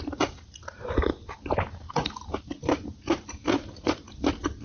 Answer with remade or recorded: recorded